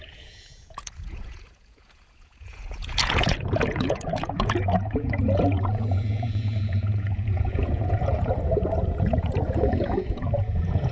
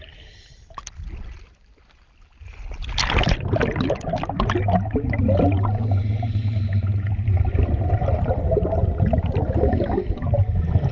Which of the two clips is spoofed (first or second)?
first